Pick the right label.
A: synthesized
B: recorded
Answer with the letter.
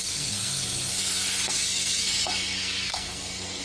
A